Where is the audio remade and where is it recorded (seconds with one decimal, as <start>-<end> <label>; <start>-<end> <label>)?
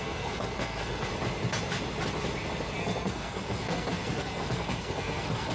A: 0.0-1.1 remade; 1.1-2.8 recorded; 2.8-5.5 remade